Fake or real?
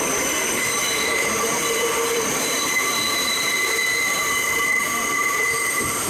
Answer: fake